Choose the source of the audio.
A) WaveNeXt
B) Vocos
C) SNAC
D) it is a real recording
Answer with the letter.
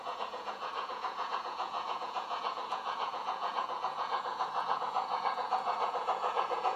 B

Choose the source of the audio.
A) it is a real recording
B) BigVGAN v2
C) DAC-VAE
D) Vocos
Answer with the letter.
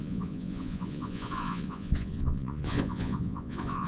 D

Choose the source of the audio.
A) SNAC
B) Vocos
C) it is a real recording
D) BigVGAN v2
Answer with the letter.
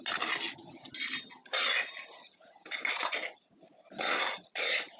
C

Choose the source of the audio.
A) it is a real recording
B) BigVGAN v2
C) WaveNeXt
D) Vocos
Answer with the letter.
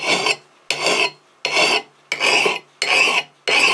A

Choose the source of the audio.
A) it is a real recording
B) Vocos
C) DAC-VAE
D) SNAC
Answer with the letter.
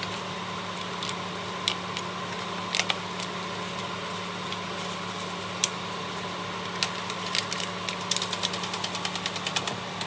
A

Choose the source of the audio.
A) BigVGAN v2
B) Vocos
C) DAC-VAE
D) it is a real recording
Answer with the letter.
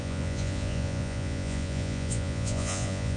B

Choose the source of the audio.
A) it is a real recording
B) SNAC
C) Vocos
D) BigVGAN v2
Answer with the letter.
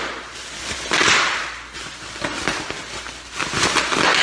A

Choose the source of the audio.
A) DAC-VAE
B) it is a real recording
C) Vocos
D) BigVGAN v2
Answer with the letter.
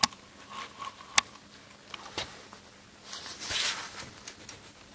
B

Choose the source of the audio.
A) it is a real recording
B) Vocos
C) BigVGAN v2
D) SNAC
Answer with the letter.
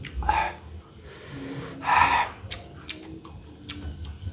A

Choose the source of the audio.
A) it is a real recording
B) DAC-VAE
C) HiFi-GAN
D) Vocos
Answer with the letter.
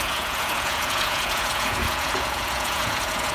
D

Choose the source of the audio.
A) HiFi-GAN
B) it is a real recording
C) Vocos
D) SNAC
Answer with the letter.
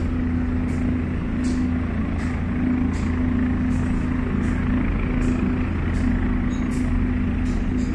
B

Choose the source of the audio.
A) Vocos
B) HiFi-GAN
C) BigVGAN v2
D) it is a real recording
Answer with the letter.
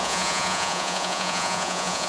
A